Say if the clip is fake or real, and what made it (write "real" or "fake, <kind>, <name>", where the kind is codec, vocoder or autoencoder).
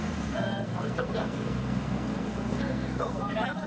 fake, codec, SNAC